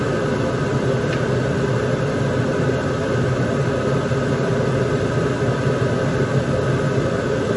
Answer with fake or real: real